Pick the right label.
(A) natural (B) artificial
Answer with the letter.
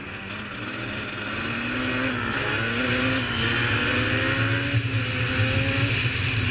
A